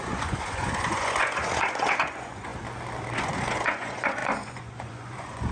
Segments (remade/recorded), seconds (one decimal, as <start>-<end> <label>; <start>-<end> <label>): 0.0-2.5 remade; 2.5-3.2 recorded; 3.2-5.5 remade